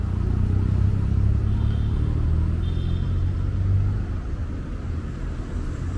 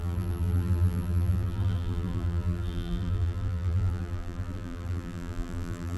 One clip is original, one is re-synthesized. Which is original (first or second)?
first